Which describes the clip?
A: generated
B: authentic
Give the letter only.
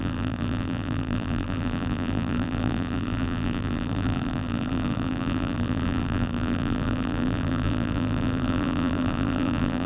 A